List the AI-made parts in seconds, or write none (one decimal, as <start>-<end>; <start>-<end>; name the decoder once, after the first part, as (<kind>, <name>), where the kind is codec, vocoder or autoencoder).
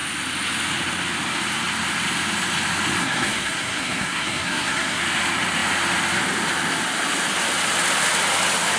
3.0-5.0 (codec, SNAC)